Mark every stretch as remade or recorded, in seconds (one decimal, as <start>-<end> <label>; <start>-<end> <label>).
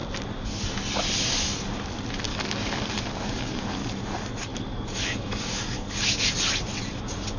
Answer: 0.0-2.3 recorded; 2.3-4.0 remade; 4.0-4.5 recorded; 4.5-6.3 remade; 6.3-7.4 recorded